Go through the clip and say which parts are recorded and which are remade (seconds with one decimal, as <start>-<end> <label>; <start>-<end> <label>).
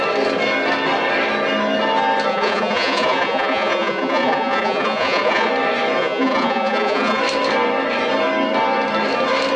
0.0-2.3 recorded; 2.3-5.5 remade; 5.5-6.0 recorded; 6.0-7.2 remade; 7.2-9.6 recorded